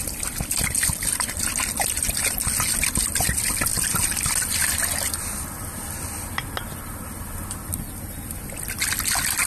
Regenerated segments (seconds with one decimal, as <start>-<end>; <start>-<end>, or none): none